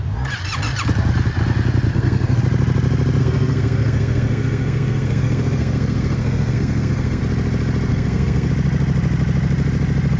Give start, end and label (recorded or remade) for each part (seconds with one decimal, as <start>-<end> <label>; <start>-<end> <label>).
0.0-1.9 recorded; 1.9-2.4 remade; 2.4-3.2 recorded; 3.2-7.2 remade; 7.2-7.9 recorded; 7.9-8.5 remade; 8.5-10.2 recorded

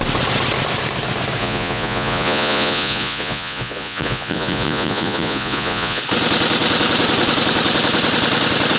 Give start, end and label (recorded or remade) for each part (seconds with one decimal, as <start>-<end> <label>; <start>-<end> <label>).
0.0-1.4 recorded; 1.4-6.0 remade; 6.0-8.8 recorded

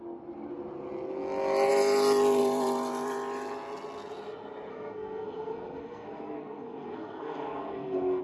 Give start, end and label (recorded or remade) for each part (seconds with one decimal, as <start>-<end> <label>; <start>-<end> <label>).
0.0-4.7 recorded; 4.7-8.2 remade